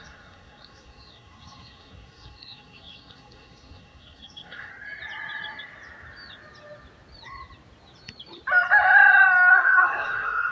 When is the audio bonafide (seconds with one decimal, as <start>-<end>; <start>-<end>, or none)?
4.7-9.5